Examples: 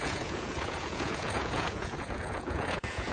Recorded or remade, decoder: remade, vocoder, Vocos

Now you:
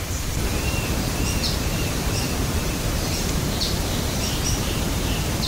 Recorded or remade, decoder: remade, vocoder, BigVGAN v2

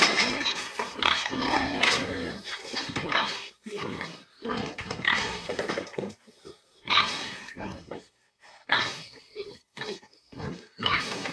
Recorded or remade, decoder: remade, codec, SNAC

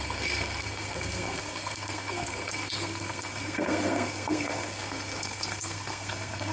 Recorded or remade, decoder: remade, codec, SNAC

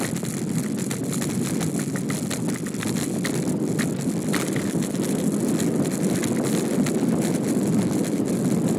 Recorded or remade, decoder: recorded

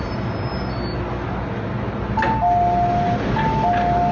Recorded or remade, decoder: recorded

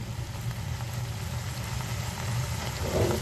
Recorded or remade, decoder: recorded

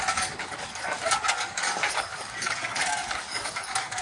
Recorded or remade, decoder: remade, codec, DAC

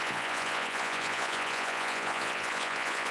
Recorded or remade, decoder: remade, vocoder, Vocos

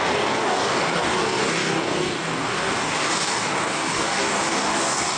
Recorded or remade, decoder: remade, codec, DAC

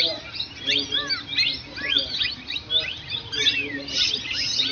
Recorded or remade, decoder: recorded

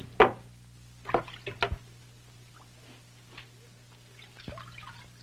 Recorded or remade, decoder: recorded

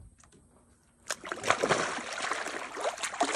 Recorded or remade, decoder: recorded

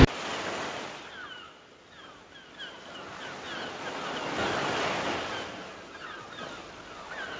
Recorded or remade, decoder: recorded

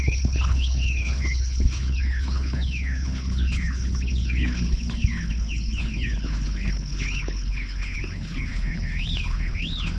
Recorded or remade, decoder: remade, codec, HILCodec